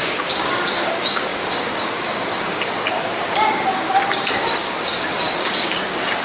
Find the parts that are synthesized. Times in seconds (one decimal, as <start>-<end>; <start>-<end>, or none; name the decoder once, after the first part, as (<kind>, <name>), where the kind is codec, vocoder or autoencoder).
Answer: 0.0-6.2 (codec, DAC)